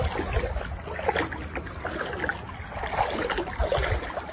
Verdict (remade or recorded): recorded